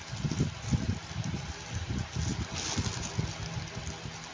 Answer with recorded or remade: recorded